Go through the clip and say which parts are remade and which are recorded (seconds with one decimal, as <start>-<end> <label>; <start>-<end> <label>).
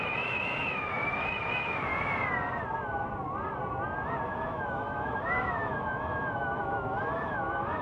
0.0-1.9 remade; 1.9-4.3 recorded; 4.3-7.8 remade